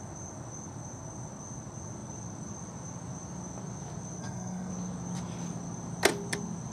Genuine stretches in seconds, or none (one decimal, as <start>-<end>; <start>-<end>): 0.0-4.2; 4.7-6.7